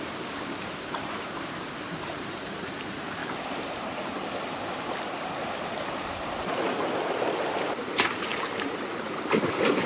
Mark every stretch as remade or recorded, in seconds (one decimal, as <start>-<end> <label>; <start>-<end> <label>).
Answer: 0.0-3.2 remade; 3.2-7.7 recorded; 7.7-9.9 remade